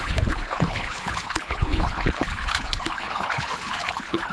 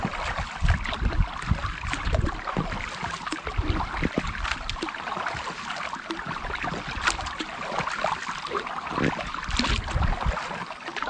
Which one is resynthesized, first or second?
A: first